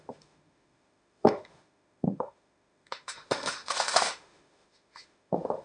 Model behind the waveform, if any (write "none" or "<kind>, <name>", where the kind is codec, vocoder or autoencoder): autoencoder, DAC-VAE